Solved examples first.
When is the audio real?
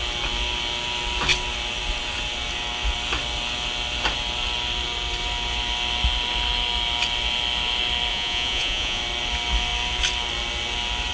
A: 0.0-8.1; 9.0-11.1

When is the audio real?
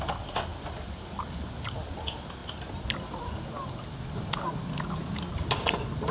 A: 0.0-6.1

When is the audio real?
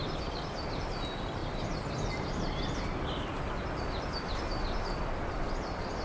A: 0.0-6.0